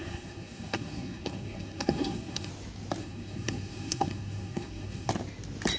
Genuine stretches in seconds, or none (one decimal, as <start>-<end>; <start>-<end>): 2.5-3.0; 5.1-5.8